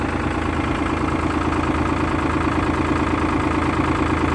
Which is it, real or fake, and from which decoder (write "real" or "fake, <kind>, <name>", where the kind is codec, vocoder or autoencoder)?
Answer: real